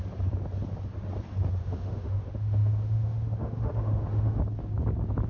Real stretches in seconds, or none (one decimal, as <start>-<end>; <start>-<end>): 0.0-1.6; 4.4-5.3